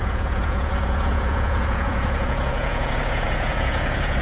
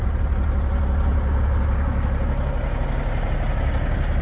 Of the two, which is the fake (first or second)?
first